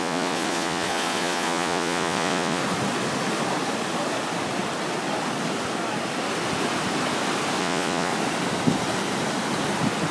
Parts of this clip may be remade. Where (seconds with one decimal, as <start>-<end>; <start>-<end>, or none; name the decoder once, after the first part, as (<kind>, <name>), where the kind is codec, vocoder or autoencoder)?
0.0-2.6 (vocoder, Vocos); 7.6-8.1